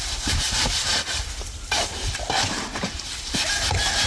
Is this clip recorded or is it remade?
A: recorded